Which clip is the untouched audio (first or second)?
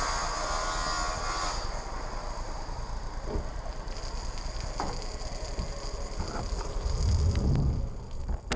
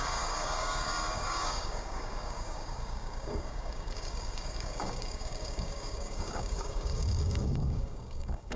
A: first